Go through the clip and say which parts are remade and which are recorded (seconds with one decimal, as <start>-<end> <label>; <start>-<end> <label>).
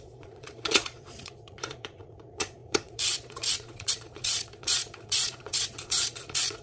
0.0-6.6 remade